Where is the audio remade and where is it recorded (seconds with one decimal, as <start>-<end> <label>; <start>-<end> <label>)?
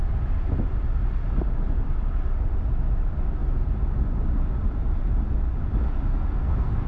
0.0-6.1 recorded; 6.1-6.9 remade